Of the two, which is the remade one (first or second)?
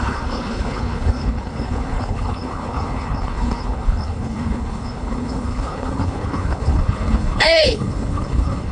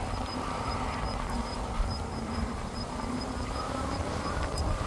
first